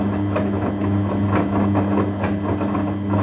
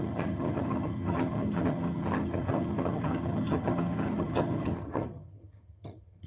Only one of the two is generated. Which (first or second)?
second